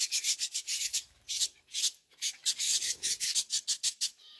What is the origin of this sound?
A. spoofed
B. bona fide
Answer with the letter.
A